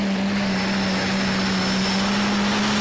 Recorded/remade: recorded